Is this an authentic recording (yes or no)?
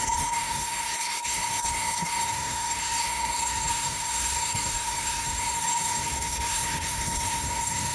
no